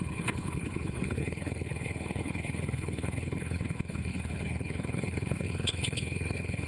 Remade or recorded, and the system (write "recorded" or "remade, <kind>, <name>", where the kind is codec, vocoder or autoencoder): remade, codec, HILCodec